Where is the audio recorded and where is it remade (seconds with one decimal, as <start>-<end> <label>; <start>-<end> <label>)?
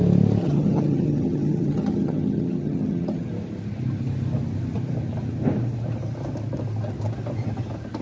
0.0-0.4 recorded; 0.4-3.3 remade; 3.3-8.0 recorded